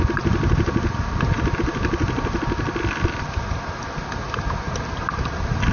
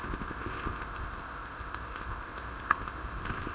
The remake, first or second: second